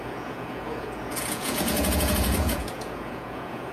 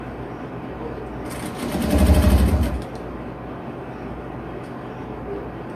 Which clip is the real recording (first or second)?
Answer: second